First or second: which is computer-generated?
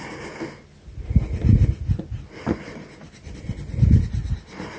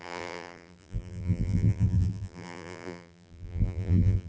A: second